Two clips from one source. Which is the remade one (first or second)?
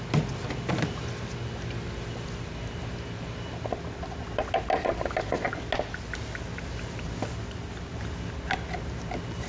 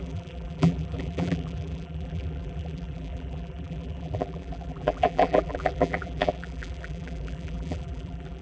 second